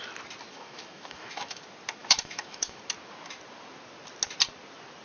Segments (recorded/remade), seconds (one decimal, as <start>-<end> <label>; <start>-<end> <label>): 0.0-0.5 recorded; 0.5-1.6 remade; 1.6-2.0 recorded; 2.0-2.8 remade; 2.8-5.0 recorded